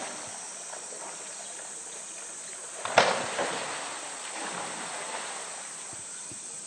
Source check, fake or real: real